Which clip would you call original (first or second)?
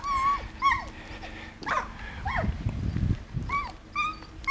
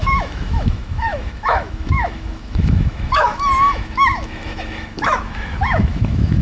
first